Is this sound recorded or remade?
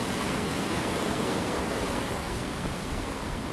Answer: remade